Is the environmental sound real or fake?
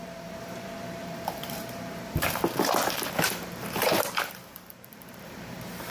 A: fake